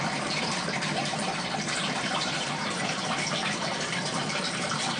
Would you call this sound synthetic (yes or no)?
yes